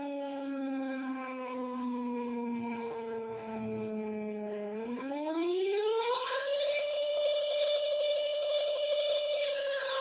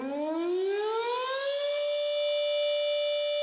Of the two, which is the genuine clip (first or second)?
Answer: second